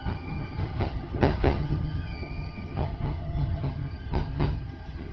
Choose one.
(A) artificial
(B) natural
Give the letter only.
A